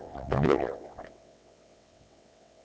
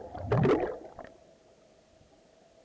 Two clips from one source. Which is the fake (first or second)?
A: first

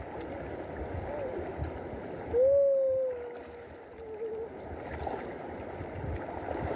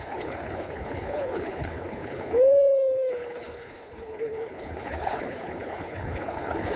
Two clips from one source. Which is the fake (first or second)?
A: second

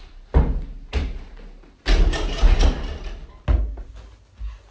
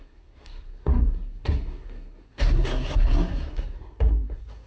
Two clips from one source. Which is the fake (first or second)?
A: second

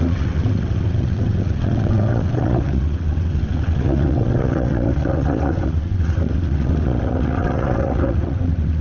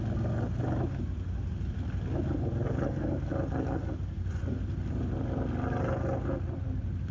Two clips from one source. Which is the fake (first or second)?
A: first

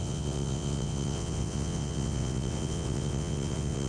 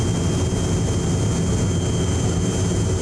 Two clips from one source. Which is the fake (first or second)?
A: first